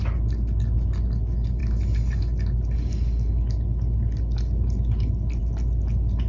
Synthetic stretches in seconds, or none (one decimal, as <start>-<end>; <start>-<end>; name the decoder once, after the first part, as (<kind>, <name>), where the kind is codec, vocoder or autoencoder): none